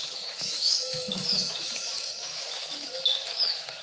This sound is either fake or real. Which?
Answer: fake